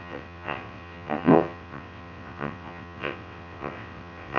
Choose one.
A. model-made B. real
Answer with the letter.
A